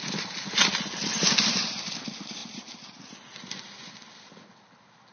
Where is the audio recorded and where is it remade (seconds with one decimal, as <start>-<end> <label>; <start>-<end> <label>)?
0.0-5.1 recorded